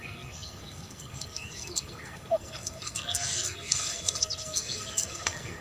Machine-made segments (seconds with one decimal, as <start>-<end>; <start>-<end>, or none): 0.0-5.6